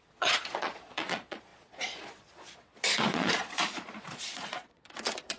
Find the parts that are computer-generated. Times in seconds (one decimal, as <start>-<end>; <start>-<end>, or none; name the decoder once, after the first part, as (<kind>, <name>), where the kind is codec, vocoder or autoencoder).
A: 0.0-5.4 (vocoder, Vocos)